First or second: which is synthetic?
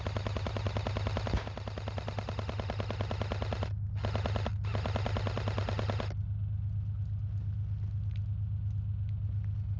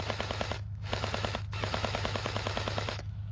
second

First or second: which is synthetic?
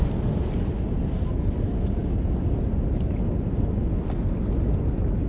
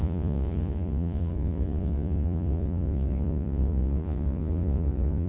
second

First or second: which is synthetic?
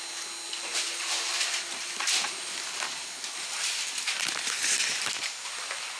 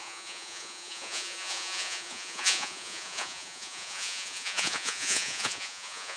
second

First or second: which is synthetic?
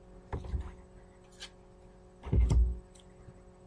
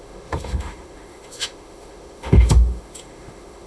second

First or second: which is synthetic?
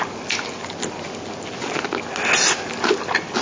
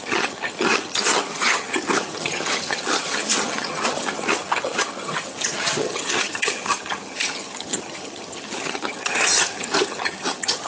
second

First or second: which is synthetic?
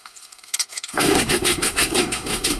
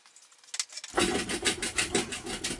first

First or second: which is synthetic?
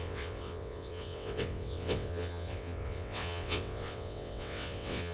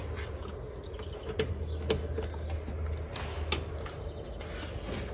first